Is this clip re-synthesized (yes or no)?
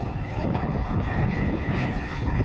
yes